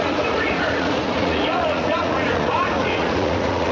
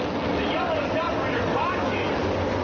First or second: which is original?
second